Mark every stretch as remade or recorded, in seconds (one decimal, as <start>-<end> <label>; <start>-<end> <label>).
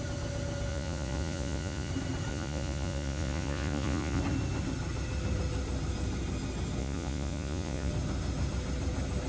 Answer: 0.0-0.7 recorded; 0.7-1.9 remade; 1.9-2.3 recorded; 2.3-4.2 remade; 4.2-6.8 recorded; 6.8-7.9 remade; 7.9-9.3 recorded